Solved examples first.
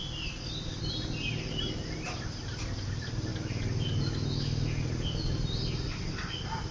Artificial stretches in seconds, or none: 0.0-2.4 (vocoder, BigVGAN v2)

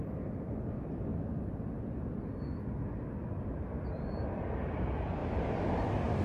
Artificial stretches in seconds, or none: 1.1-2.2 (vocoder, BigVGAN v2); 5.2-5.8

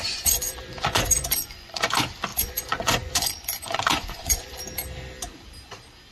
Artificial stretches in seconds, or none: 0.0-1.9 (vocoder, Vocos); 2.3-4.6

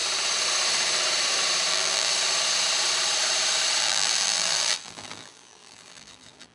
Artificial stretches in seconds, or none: 1.7-2.1 (vocoder, BigVGAN v2); 3.8-6.5

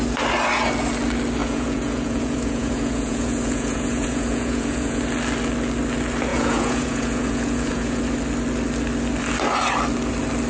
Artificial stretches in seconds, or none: 1.4-5.0 (vocoder, Vocos); 6.3-8.0

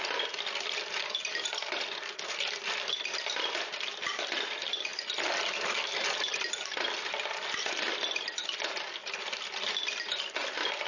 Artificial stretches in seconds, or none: none

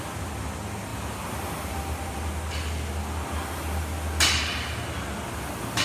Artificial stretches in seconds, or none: none

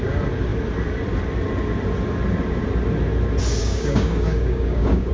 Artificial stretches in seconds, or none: 3.6-5.1 (codec, DAC)